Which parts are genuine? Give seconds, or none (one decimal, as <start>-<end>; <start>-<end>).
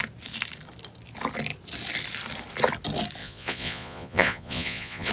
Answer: 0.0-3.2